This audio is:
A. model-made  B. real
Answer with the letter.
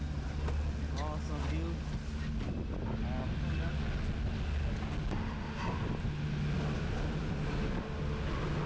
B